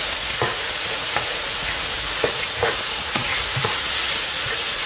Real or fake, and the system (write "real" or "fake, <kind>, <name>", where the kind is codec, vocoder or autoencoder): fake, vocoder, Vocos